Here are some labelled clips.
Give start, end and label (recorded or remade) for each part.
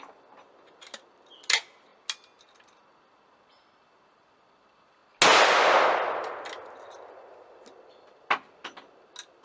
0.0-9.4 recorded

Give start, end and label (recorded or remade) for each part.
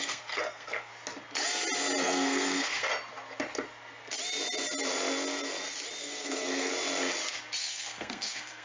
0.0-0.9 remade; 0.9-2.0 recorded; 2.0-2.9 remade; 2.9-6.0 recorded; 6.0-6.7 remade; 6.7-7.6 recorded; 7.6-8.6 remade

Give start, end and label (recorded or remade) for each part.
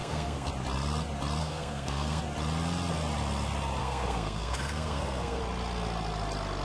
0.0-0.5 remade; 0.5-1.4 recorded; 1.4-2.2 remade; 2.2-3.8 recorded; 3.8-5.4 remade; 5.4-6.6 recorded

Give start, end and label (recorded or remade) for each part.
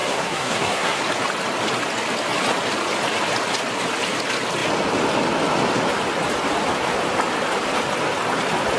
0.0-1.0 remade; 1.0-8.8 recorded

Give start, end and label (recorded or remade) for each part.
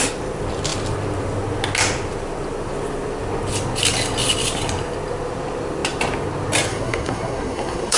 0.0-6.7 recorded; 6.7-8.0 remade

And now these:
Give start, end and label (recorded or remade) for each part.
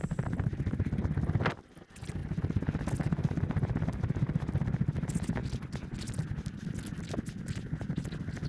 0.0-8.5 recorded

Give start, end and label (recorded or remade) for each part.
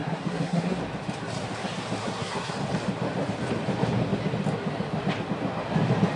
0.0-0.8 remade; 0.8-2.0 recorded; 2.0-2.5 remade; 2.5-6.2 recorded